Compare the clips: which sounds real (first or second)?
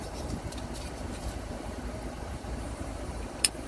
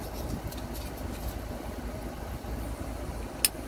second